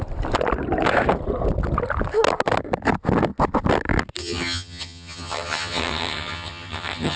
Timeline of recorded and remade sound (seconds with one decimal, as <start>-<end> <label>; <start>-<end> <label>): 0.0-4.2 recorded; 4.2-7.2 remade